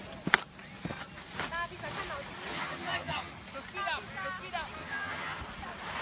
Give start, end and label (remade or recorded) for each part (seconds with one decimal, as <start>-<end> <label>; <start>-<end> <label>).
0.0-2.5 recorded; 2.5-3.3 remade; 3.3-4.8 recorded; 4.8-5.4 remade; 5.4-6.0 recorded

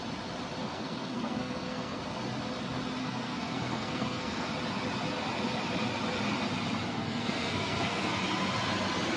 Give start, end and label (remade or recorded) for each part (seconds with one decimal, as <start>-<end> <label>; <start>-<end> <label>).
0.0-0.6 recorded; 0.6-2.0 remade; 2.0-3.0 recorded; 3.0-4.5 remade; 4.5-6.9 recorded; 6.9-8.2 remade; 8.2-9.2 recorded

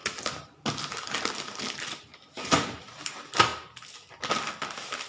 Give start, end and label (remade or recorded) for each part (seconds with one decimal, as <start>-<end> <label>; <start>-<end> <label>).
0.0-3.1 remade; 3.1-5.1 recorded

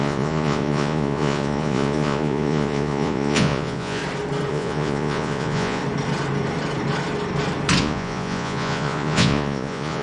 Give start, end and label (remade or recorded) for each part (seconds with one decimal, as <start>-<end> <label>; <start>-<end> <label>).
0.0-4.0 remade; 4.0-4.5 recorded; 4.5-5.8 remade; 5.8-7.8 recorded; 7.8-10.0 remade

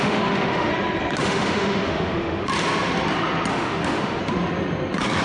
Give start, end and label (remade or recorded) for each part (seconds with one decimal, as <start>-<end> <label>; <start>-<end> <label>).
0.0-0.7 remade; 0.7-1.2 recorded; 1.2-2.5 remade; 2.5-3.5 recorded; 3.5-4.2 remade; 4.2-5.2 recorded

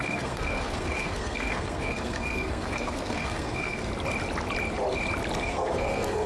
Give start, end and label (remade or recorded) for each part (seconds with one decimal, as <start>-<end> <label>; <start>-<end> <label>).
0.0-3.9 remade; 3.9-5.4 recorded; 5.4-6.3 remade